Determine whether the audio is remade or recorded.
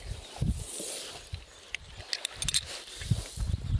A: recorded